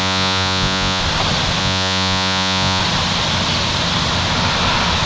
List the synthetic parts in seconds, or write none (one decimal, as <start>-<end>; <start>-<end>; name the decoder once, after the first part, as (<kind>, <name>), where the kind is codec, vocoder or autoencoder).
0.0-1.0 (vocoder, Vocos); 1.6-2.8